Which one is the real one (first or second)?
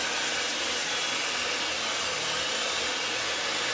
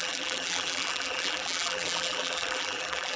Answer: first